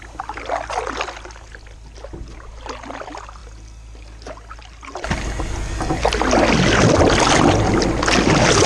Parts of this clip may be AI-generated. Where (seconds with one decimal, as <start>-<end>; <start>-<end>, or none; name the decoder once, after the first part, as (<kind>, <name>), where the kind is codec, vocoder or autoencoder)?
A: none